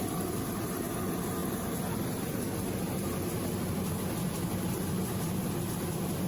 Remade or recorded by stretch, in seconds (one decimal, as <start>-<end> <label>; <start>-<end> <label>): 0.0-1.4 recorded; 1.4-2.4 remade; 2.4-6.3 recorded